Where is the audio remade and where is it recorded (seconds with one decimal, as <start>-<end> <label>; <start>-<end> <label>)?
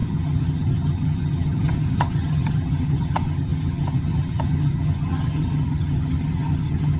0.0-7.0 remade